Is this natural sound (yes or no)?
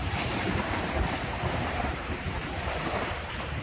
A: no